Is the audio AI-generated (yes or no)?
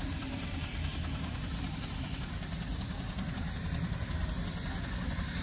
no